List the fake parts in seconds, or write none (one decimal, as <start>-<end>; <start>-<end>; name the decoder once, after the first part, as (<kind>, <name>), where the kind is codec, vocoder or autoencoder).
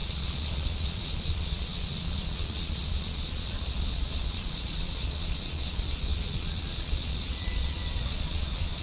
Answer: 0.0-8.8 (vocoder, Vocos)